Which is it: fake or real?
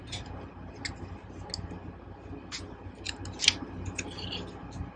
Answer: real